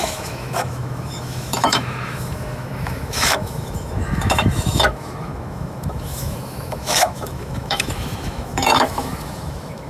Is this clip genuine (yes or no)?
no